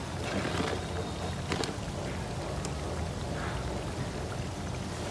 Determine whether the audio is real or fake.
real